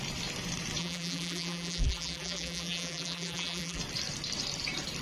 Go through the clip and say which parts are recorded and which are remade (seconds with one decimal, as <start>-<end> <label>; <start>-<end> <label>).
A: 0.0-0.8 recorded; 0.8-3.8 remade; 3.8-5.0 recorded